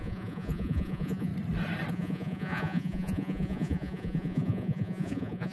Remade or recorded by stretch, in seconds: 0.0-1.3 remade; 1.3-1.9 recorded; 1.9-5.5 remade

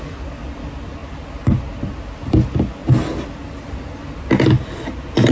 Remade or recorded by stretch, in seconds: 0.0-5.3 recorded